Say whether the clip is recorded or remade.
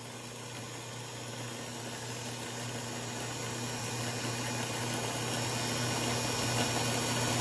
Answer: recorded